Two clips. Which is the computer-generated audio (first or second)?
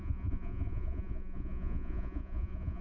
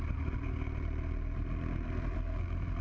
first